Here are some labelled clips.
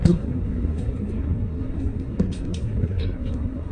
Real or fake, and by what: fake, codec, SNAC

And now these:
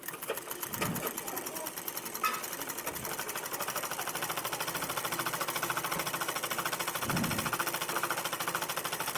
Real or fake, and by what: real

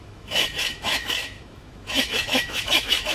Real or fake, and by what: fake, autoencoder, DAC-VAE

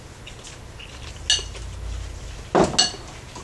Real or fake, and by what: real